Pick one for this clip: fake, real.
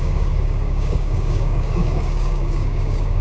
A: fake